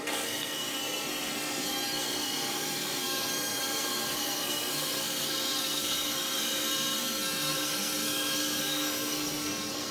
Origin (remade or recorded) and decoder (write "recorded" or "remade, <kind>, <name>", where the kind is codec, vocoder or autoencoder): remade, codec, SNAC